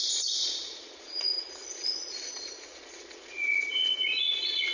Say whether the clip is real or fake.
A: fake